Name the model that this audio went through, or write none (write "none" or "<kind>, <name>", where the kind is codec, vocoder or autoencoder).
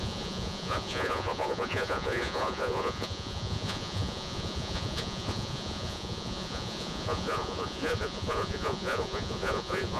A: vocoder, Vocos